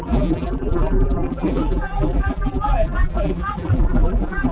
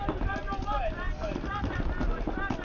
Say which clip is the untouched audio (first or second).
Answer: second